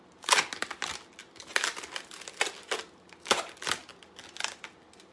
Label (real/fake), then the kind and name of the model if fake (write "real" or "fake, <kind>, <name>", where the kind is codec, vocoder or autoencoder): real